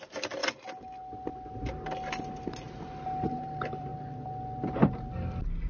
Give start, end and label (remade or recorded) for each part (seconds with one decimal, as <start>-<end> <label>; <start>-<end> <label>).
0.0-0.4 remade; 0.4-3.3 recorded; 3.3-3.9 remade; 3.9-5.7 recorded